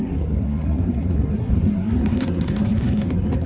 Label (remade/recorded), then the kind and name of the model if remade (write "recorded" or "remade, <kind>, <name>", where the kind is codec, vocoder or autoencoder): remade, codec, SNAC